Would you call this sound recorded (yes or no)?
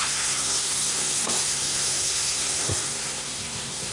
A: no